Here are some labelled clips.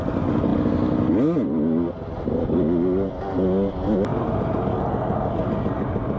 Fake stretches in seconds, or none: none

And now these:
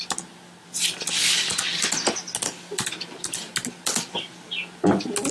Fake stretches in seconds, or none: none

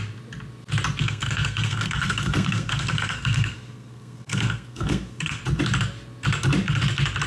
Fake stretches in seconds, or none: 1.0-5.4

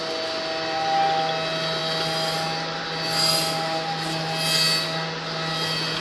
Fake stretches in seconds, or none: none

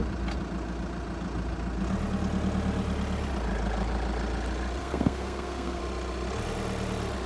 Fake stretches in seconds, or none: 4.8-5.8

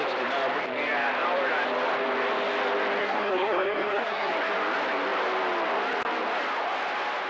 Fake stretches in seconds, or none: 3.0-4.3